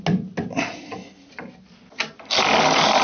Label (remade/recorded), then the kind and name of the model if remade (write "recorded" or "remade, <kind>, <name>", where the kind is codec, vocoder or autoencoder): recorded